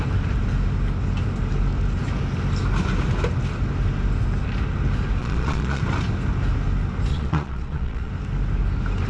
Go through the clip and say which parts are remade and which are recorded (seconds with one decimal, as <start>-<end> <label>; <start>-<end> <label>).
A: 0.0-5.2 recorded; 5.2-5.8 remade; 5.8-7.1 recorded; 7.1-8.1 remade; 8.1-9.1 recorded